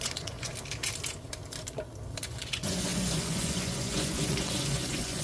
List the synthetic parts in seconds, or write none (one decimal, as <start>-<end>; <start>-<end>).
0.0-0.5; 2.2-5.2